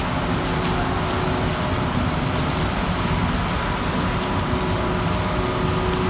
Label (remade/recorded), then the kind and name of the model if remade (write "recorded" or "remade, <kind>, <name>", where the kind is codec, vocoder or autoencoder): recorded